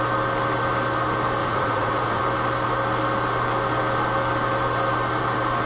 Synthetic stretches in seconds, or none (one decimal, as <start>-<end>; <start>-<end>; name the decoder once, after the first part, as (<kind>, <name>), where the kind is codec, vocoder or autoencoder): 1.4-2.2 (vocoder, Vocos)